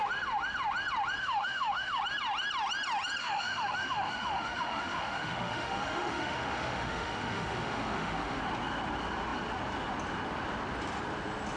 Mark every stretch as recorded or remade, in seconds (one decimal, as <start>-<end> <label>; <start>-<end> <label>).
0.0-1.2 recorded; 1.2-2.0 remade; 2.0-3.2 recorded; 3.2-8.4 remade; 8.4-11.6 recorded

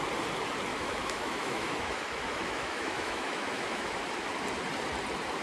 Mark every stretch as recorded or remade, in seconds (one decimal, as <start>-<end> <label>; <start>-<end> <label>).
0.0-0.7 recorded; 0.7-3.9 remade; 3.9-5.4 recorded

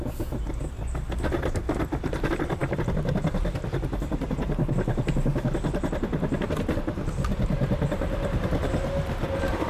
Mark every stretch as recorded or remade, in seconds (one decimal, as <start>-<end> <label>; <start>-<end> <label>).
0.0-9.7 recorded

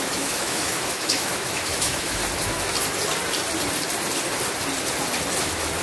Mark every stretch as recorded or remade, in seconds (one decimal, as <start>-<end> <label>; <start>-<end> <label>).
0.0-2.2 remade; 2.2-5.8 recorded

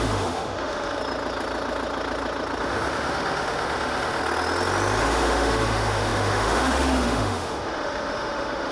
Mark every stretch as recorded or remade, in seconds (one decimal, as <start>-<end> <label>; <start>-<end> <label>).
0.0-1.0 remade; 1.0-2.6 recorded; 2.6-4.2 remade; 4.2-5.0 recorded; 5.0-8.7 remade

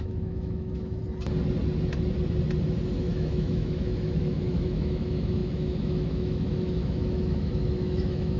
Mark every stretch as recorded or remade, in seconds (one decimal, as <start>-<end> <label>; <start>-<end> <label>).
0.0-1.0 remade; 1.0-3.0 recorded; 3.0-8.4 remade

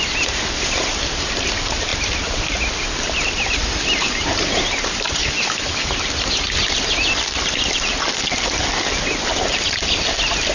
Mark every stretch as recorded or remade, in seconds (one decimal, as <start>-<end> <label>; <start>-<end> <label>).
0.0-5.2 recorded; 5.2-5.9 remade; 5.9-10.5 recorded